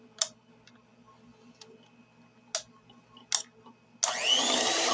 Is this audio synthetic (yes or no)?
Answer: no